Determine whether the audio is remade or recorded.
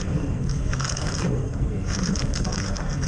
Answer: remade